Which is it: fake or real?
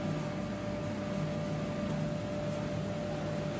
real